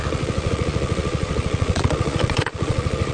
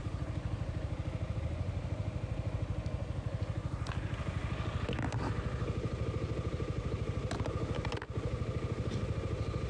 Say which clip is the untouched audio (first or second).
second